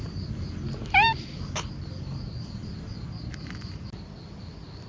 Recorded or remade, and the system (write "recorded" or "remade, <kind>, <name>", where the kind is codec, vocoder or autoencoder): recorded